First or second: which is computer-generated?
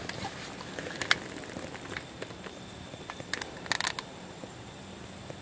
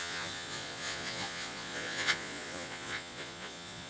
second